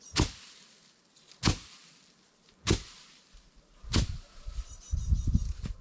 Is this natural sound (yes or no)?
yes